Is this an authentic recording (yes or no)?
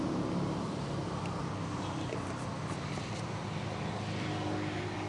yes